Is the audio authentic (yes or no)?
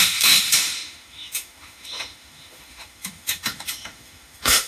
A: no